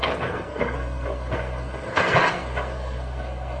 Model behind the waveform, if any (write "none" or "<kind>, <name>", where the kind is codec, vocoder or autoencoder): codec, SNAC